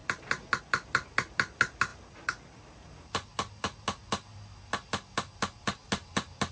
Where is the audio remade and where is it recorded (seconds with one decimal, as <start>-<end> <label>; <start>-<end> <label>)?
0.0-6.5 recorded